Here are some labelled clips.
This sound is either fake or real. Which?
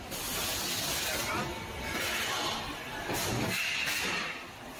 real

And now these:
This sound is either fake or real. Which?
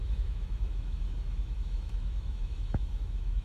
fake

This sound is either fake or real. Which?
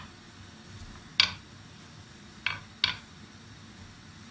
real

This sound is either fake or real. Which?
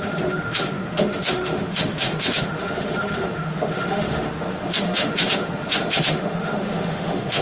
fake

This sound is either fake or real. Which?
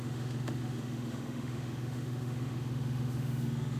fake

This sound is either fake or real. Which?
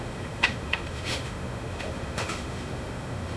fake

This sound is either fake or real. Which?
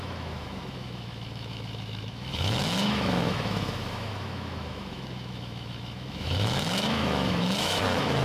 fake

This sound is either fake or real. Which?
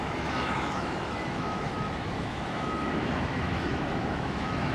fake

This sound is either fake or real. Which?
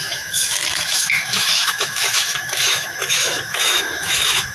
fake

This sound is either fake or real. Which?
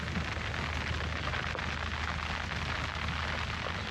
real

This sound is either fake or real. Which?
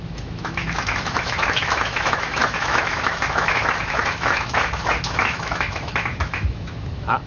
fake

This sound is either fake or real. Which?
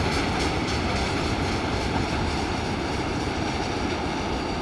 real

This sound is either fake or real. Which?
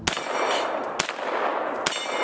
real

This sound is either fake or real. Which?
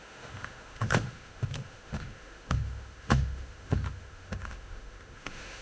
fake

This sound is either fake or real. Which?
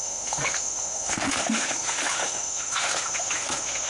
fake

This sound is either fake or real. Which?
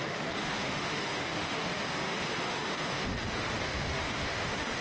fake